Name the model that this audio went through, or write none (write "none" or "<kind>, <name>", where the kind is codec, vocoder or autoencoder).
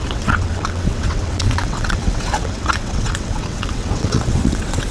vocoder, WaveNeXt